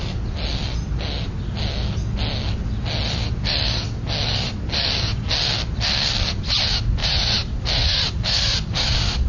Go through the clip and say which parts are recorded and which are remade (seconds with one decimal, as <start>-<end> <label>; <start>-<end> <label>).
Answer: 0.0-7.0 recorded; 7.0-9.3 remade